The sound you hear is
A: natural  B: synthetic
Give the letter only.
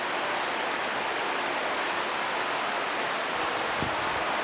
A